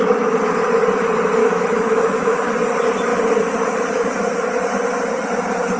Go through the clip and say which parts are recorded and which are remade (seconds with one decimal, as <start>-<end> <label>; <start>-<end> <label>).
0.0-1.4 recorded; 1.4-2.5 remade; 2.5-5.8 recorded